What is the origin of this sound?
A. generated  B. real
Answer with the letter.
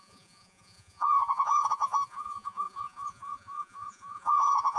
A